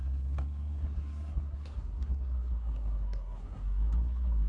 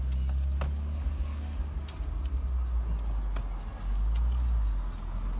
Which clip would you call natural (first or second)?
second